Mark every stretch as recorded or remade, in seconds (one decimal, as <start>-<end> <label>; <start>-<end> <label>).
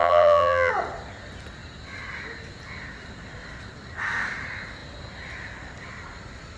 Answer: 0.0-0.7 remade; 0.7-6.6 recorded